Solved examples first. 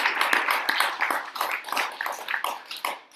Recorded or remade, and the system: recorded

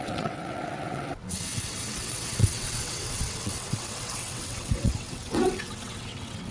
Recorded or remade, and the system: remade, vocoder, WaveNeXt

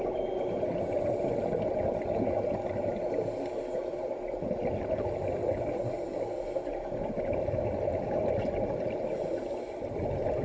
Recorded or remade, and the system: recorded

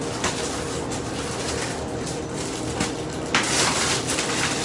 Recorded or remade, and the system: recorded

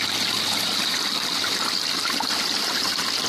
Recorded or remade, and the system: recorded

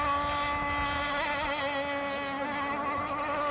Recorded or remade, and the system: recorded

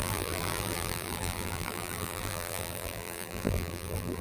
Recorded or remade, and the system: remade, vocoder, BigVGAN v2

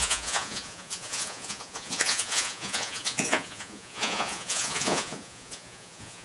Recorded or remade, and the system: remade, vocoder, Vocos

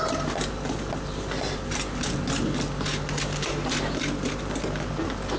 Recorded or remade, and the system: recorded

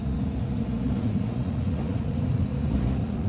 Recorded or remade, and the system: remade, vocoder, Vocos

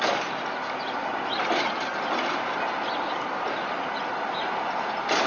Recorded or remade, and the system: recorded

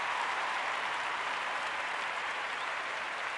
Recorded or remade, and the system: remade, vocoder, BigVGAN v2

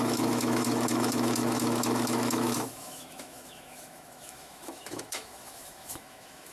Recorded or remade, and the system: remade, autoencoder, DAC-VAE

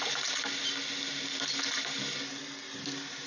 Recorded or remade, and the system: recorded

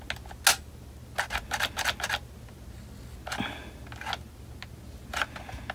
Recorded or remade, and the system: recorded